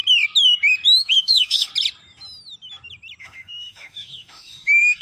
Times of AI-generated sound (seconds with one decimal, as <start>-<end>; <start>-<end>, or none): 1.0-1.7; 3.2-5.0